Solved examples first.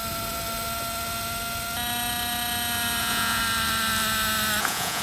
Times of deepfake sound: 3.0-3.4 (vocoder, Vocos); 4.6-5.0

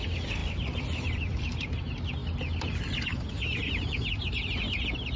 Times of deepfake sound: none

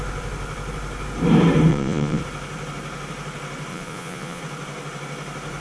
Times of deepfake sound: 1.7-2.2 (vocoder, Vocos); 3.7-4.4